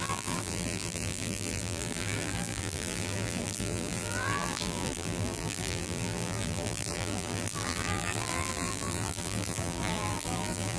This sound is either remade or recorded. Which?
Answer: remade